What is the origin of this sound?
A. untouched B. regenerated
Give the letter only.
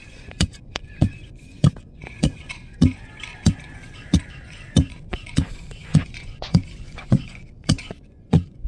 B